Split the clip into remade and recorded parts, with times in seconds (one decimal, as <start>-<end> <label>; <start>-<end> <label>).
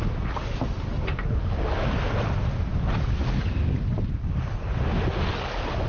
0.0-5.9 recorded